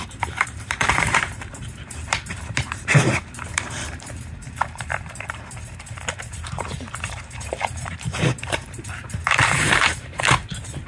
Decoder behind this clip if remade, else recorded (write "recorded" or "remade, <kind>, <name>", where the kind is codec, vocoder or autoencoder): remade, vocoder, BigVGAN v2